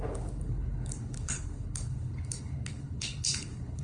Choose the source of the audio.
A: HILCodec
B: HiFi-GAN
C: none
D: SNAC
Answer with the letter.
A